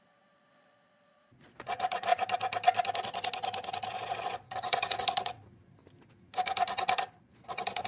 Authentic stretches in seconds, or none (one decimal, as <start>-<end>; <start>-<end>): 2.1-3.7; 5.6-7.1